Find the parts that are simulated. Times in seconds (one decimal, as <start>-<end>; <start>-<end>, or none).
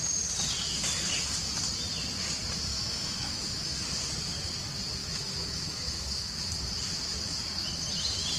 2.7-4.0; 5.0-6.5